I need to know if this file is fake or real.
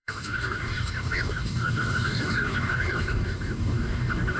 fake